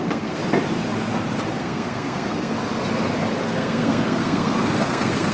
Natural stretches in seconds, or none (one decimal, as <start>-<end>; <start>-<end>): 0.4-1.6; 2.5-3.4